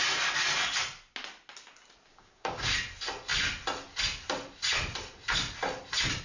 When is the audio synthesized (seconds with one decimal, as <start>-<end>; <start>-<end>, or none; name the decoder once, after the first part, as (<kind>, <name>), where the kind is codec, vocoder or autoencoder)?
2.1-2.7 (codec, DAC)

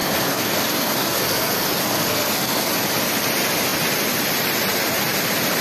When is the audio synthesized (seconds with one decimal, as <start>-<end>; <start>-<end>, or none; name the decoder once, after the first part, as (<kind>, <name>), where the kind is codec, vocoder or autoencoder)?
0.0-2.7 (codec, SNAC)

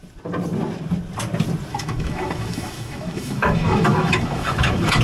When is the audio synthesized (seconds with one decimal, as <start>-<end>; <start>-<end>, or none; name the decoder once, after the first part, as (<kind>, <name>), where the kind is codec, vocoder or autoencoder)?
1.7-5.0 (autoencoder, DAC-VAE)

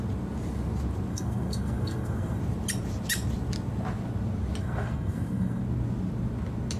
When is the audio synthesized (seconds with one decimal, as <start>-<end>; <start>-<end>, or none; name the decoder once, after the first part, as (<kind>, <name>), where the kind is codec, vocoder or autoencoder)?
1.1-2.4 (codec, SNAC); 4.6-5.6